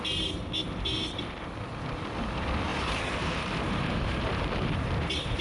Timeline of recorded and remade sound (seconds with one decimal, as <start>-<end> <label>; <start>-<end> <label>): 0.0-2.7 recorded; 2.7-5.4 remade